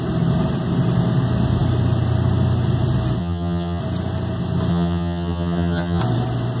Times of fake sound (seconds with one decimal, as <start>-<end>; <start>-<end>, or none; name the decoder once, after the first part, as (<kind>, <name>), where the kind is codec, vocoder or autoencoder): 3.2-3.8 (vocoder, HiFi-GAN); 4.7-6.0